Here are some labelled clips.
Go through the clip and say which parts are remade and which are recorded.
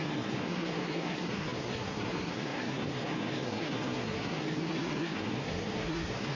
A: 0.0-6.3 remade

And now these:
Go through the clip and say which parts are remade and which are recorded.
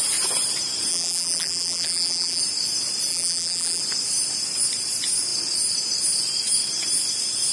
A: 0.0-0.9 recorded; 0.9-2.4 remade; 2.4-3.1 recorded; 3.1-3.8 remade; 3.8-7.5 recorded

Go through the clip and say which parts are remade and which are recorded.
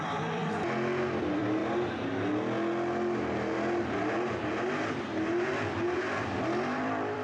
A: 0.0-0.4 remade; 0.4-1.2 recorded; 1.2-1.6 remade; 1.6-4.9 recorded; 4.9-7.2 remade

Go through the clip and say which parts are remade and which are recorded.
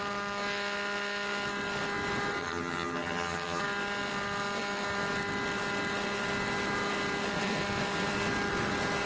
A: 0.0-2.4 recorded; 2.4-3.6 remade; 3.6-9.1 recorded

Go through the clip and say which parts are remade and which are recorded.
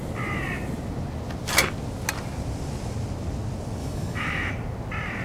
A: 0.0-3.8 recorded; 3.8-4.5 remade; 4.5-5.2 recorded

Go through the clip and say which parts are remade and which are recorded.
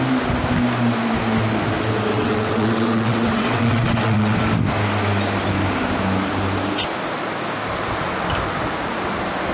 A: 0.0-2.1 recorded; 2.1-4.4 remade; 4.4-9.5 recorded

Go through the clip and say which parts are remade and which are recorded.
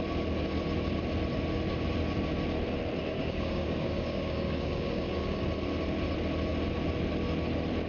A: 0.0-3.2 recorded; 3.2-5.4 remade; 5.4-7.9 recorded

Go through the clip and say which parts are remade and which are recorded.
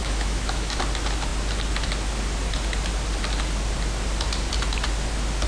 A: 0.0-0.8 remade; 0.8-5.5 recorded